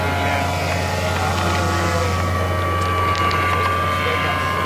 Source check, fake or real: real